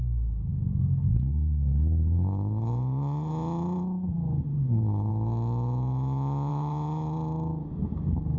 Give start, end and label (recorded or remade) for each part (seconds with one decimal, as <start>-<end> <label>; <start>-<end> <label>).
0.0-0.5 recorded; 0.5-5.1 remade; 5.1-6.5 recorded; 6.5-7.7 remade; 7.7-8.4 recorded